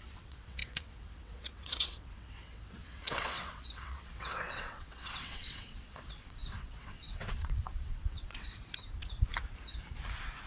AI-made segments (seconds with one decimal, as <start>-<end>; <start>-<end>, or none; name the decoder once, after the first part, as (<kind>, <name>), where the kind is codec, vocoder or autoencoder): 0.0-8.6 (vocoder, WaveNeXt)